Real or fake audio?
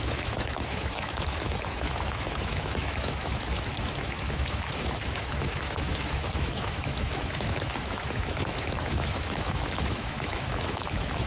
fake